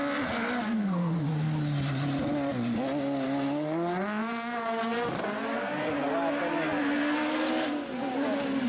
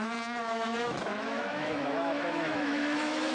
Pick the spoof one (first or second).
second